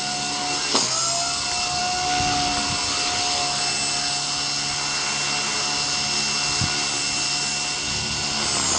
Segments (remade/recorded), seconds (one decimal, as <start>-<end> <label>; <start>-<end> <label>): 0.0-8.8 recorded